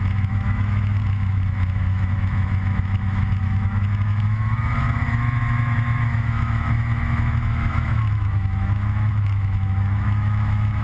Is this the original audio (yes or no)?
no